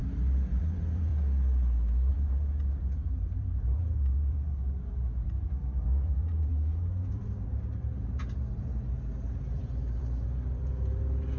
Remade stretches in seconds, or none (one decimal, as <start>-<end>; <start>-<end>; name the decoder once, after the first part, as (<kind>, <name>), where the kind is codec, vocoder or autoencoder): 0.0-1.1 (vocoder, BigVGAN v2); 2.1-6.5; 7.1-11.4